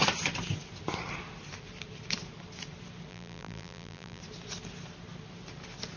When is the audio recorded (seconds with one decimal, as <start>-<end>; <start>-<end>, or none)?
0.0-3.1; 4.2-6.0